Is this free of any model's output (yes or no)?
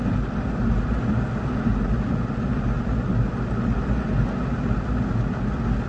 yes